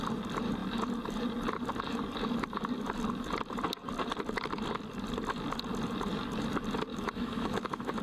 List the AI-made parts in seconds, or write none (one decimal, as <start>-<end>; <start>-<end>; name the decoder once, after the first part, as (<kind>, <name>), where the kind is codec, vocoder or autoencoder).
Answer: 6.9-8.0 (autoencoder, DAC-VAE)